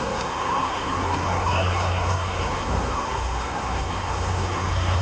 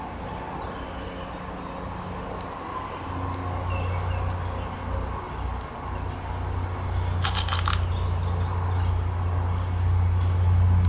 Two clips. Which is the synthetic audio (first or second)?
first